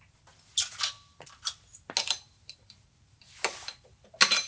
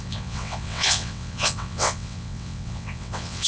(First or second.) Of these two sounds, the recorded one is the first